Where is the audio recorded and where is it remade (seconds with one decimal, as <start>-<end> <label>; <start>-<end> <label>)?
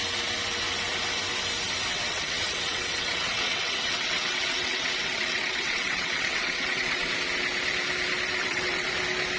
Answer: 0.0-1.9 recorded; 1.9-7.1 remade; 7.1-8.4 recorded; 8.4-8.9 remade; 8.9-9.4 recorded